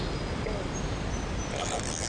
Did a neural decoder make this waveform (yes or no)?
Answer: no